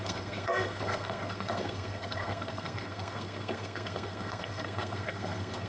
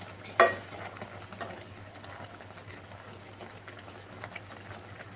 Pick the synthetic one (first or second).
first